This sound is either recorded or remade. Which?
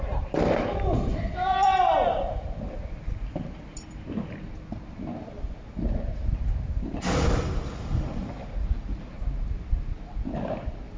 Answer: recorded